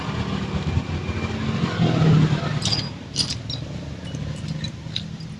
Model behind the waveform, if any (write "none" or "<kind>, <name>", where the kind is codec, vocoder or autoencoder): none